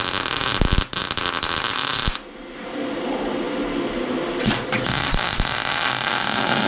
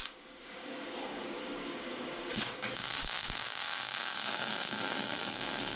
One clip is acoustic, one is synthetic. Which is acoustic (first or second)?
first